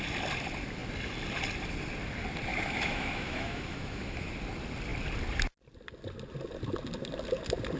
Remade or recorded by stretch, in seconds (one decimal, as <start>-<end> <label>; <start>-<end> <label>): 0.0-2.5 recorded; 2.5-4.3 remade; 4.3-7.8 recorded